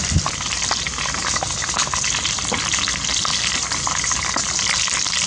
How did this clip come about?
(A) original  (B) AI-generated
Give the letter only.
A